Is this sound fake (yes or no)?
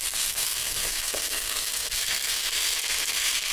yes